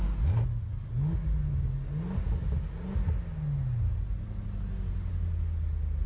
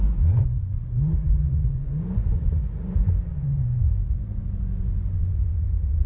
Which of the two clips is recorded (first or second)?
first